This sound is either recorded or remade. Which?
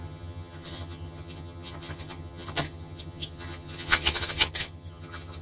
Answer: remade